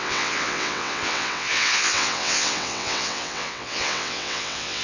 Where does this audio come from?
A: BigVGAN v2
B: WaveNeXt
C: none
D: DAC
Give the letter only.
B